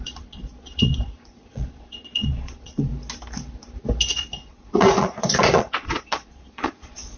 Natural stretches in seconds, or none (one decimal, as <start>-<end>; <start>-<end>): 2.9-4.1